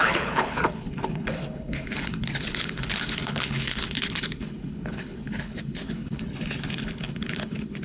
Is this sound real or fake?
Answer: fake